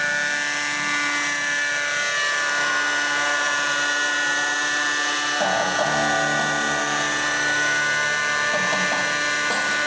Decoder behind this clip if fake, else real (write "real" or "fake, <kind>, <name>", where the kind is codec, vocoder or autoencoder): real